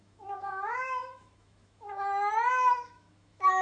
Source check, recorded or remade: remade